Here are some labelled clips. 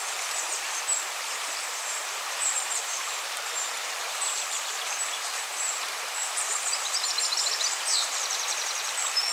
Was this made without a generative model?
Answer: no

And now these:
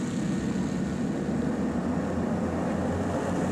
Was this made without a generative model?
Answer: yes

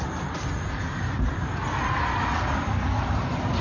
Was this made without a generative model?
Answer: no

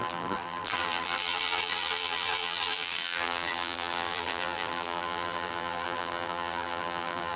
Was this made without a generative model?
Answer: no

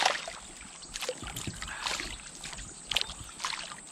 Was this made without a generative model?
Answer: yes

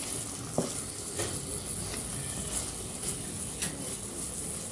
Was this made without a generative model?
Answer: yes